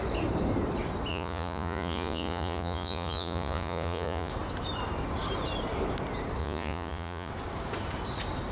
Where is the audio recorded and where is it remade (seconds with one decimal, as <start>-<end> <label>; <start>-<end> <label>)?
0.0-1.1 recorded; 1.1-4.3 remade; 4.3-6.4 recorded; 6.4-7.3 remade; 7.3-8.5 recorded

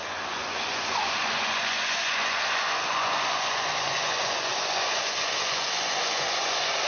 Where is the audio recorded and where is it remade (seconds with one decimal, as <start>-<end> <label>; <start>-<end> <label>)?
0.0-6.9 remade

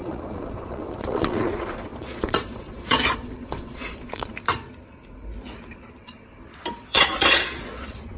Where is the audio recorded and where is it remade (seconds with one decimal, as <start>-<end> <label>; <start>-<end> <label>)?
0.0-4.3 remade; 4.3-6.7 recorded; 6.7-8.2 remade

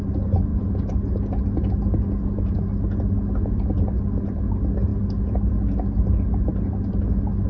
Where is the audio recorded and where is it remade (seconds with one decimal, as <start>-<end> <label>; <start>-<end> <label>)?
0.0-7.5 recorded

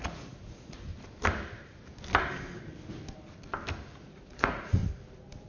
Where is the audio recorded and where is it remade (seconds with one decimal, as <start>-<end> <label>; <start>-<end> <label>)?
0.0-0.9 remade; 0.9-4.0 recorded; 4.0-4.8 remade; 4.8-5.5 recorded